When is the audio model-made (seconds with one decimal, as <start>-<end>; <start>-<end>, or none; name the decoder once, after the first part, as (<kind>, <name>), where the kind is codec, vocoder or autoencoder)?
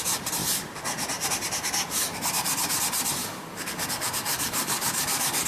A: 3.2-5.5 (codec, DAC)